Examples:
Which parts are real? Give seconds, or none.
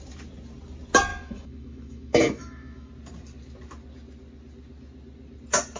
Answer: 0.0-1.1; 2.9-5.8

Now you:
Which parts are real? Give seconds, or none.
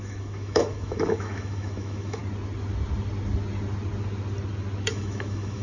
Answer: 2.2-4.9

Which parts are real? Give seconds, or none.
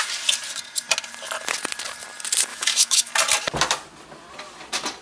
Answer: 0.0-2.5; 3.1-5.0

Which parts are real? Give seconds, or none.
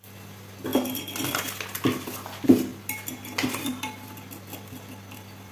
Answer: 0.0-5.5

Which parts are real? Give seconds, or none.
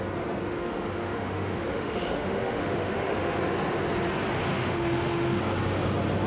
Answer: 0.0-0.6; 3.4-4.5; 5.4-6.3